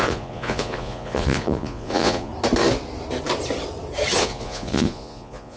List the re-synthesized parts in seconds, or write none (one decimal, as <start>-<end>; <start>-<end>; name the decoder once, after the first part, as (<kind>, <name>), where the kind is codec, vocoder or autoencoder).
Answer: 0.0-2.3 (vocoder, Vocos); 4.2-5.6